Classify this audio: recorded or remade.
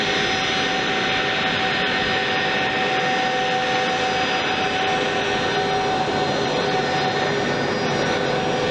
recorded